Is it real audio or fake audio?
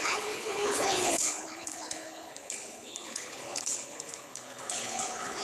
fake